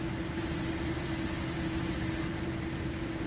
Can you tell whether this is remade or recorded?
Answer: recorded